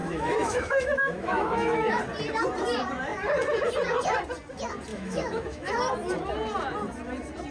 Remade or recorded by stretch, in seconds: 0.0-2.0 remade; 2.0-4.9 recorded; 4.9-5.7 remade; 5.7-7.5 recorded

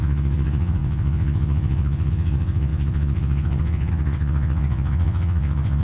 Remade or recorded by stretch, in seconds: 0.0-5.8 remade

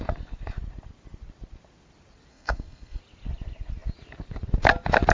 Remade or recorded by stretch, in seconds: 0.0-2.3 recorded; 2.3-3.0 remade; 3.0-5.1 recorded